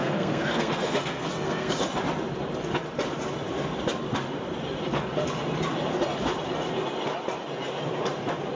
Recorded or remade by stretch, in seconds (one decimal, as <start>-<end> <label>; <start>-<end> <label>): 0.0-1.7 remade; 1.7-8.5 recorded